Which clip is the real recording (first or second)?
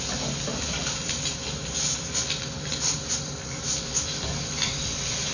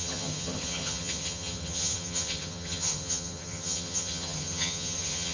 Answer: first